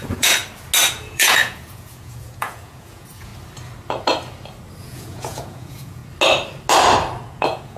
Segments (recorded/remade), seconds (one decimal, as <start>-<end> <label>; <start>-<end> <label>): 0.0-0.4 remade; 0.4-0.9 recorded; 0.9-3.3 remade; 3.3-4.8 recorded; 4.8-6.0 remade; 6.0-7.2 recorded; 7.2-7.8 remade